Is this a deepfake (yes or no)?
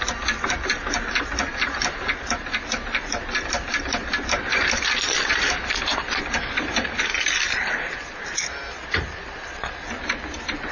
no